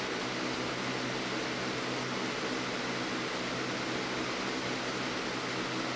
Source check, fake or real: real